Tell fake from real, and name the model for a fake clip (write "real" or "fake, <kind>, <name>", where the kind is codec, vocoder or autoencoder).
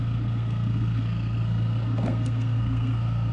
fake, codec, SNAC